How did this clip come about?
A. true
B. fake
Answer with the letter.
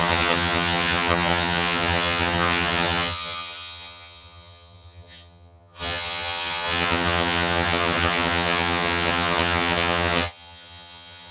B